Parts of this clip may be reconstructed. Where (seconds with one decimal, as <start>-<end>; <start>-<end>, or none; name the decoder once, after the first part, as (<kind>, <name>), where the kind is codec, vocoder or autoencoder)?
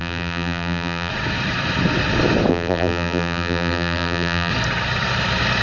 0.0-1.1 (vocoder, BigVGAN v2); 2.5-4.5